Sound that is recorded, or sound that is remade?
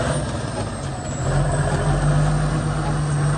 recorded